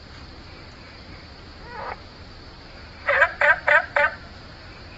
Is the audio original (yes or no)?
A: no